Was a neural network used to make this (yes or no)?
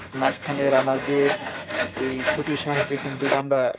yes